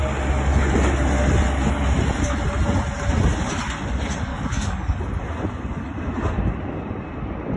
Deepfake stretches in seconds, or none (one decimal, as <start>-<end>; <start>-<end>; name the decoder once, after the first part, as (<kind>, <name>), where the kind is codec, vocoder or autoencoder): 4.3-5.0 (codec, DAC)